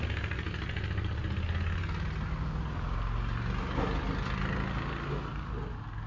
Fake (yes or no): no